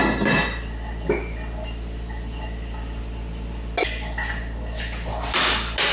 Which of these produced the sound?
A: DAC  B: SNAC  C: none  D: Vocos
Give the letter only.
C